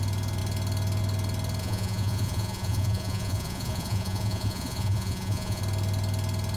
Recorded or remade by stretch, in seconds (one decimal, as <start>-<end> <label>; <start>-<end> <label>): 0.0-1.6 recorded; 1.6-5.6 remade; 5.6-6.6 recorded